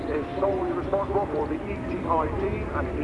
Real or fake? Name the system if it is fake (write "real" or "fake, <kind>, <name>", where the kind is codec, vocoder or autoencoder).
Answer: real